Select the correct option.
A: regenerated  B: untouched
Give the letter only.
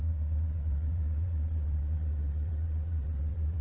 A